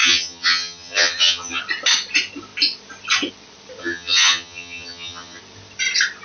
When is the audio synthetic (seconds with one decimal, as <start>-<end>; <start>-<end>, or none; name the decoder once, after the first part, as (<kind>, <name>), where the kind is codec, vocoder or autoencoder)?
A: 0.0-1.6 (vocoder, HiFi-GAN); 3.8-5.4